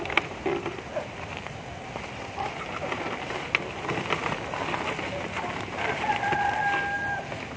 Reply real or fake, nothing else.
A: real